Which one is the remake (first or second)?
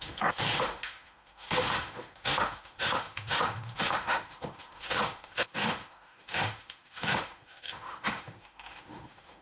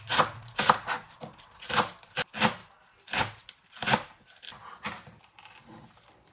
first